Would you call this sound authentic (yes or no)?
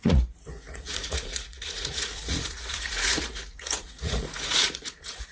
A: no